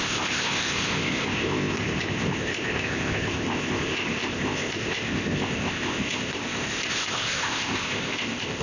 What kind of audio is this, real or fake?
fake